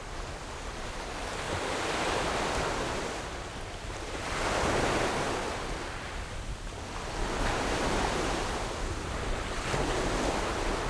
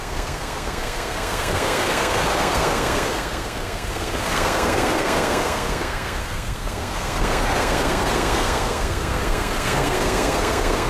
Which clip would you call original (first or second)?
first